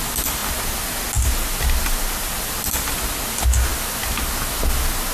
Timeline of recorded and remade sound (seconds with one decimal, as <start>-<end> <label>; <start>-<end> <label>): 0.0-5.1 recorded